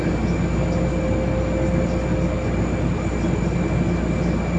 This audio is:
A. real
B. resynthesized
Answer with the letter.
A